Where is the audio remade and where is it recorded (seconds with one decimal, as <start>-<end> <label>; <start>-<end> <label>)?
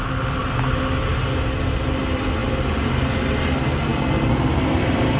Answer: 0.0-5.2 recorded